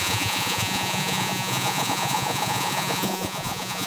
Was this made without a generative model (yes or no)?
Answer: no